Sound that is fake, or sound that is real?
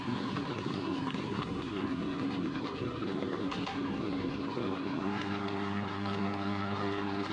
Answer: fake